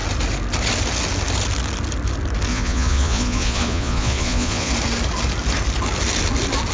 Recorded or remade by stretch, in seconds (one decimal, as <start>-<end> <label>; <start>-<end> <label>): 0.0-2.5 recorded; 2.5-4.7 remade; 4.7-6.7 recorded